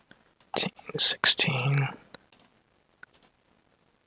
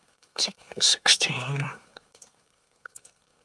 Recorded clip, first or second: first